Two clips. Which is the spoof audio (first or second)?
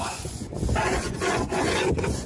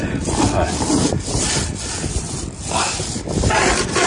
first